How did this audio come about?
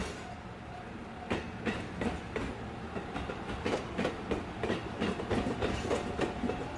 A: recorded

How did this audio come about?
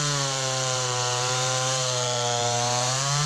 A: remade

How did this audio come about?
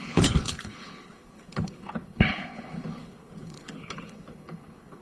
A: remade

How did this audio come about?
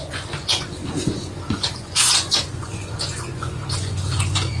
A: remade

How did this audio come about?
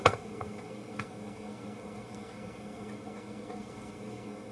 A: remade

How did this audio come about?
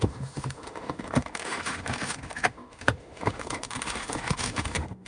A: remade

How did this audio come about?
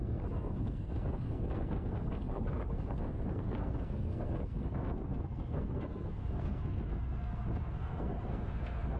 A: remade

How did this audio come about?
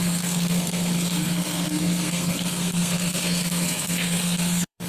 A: remade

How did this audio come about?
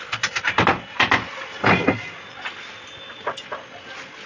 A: recorded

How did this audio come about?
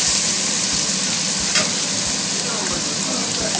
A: recorded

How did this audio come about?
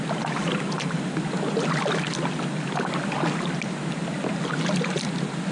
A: recorded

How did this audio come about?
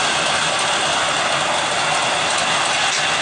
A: recorded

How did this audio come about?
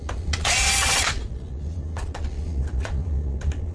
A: remade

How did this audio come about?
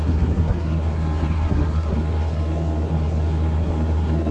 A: remade